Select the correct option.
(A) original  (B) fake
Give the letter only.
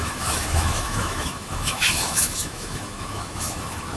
B